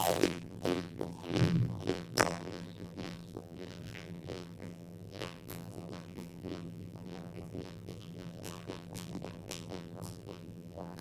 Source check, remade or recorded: remade